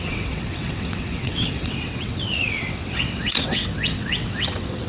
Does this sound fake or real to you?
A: fake